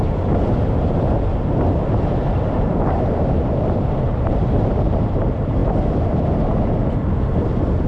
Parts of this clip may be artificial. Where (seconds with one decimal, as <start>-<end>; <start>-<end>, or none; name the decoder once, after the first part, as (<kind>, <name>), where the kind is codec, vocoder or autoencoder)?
0.0-5.6 (vocoder, BigVGAN v2)

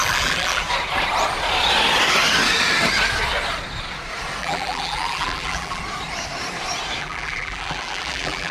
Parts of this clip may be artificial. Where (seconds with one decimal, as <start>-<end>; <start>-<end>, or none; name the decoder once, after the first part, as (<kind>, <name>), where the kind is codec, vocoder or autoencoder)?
0.0-0.6 (vocoder, BigVGAN v2); 4.4-5.8; 7.0-8.5